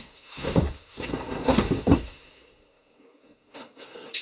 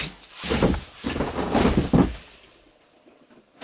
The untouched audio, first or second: second